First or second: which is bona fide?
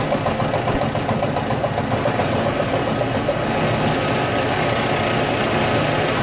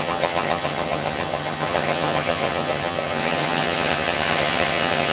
first